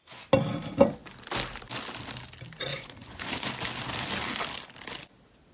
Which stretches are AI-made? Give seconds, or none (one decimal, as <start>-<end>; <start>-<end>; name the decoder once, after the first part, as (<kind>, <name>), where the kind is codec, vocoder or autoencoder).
2.7-3.5 (vocoder, Vocos)